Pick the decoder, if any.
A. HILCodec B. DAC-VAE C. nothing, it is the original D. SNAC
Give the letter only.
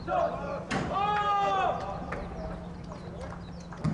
C